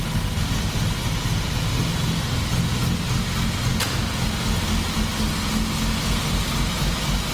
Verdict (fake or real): real